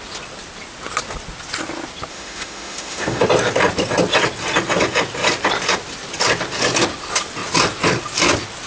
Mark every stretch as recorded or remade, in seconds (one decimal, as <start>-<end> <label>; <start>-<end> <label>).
0.0-2.1 recorded; 2.1-3.2 remade; 3.2-8.7 recorded

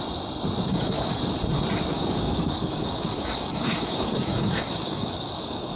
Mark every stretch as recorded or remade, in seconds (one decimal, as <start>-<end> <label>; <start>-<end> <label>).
0.0-0.7 recorded; 0.7-1.2 remade; 1.2-1.9 recorded; 1.9-5.8 remade

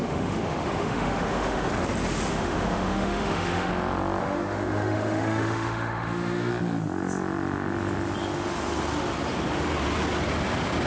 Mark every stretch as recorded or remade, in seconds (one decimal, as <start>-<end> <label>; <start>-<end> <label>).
0.0-1.7 remade; 1.7-2.3 recorded; 2.3-3.7 remade; 3.7-4.2 recorded; 4.2-6.5 remade; 6.5-10.9 recorded

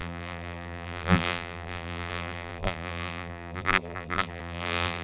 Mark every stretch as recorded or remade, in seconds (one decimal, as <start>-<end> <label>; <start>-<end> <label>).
0.0-5.0 remade

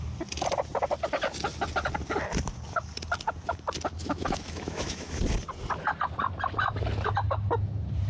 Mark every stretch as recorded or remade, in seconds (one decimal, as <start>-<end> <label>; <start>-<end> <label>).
0.0-4.0 recorded; 4.0-5.2 remade; 5.2-8.1 recorded

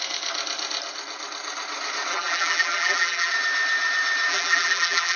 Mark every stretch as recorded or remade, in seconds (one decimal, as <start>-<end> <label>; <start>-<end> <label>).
0.0-2.1 recorded; 2.1-3.3 remade; 3.3-4.3 recorded; 4.3-5.2 remade